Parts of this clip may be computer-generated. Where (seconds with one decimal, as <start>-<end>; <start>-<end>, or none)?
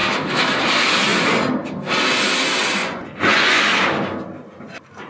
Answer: 2.8-3.6